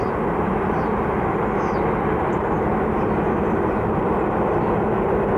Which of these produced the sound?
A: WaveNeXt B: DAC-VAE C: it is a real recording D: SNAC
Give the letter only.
C